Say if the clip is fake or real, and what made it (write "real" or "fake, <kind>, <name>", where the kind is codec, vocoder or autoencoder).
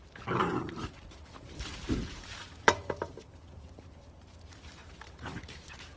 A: fake, vocoder, BigVGAN v2